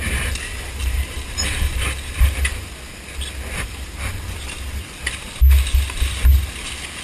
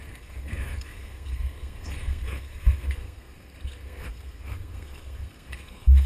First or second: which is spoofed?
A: second